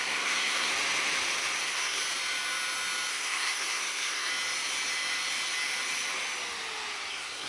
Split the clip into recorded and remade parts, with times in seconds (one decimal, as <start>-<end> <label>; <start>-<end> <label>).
0.0-0.7 remade; 0.7-1.6 recorded; 1.6-2.0 remade; 2.0-3.1 recorded; 3.1-4.3 remade; 4.3-7.1 recorded; 7.1-7.5 remade